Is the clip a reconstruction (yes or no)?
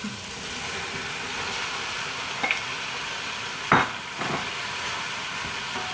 no